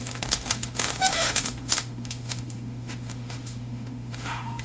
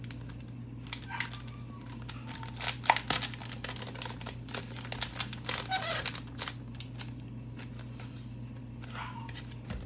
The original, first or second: second